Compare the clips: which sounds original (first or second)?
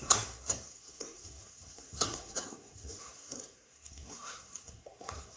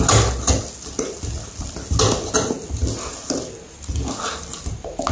second